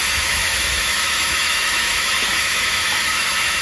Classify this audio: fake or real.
fake